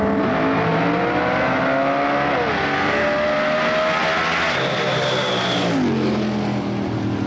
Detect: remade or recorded recorded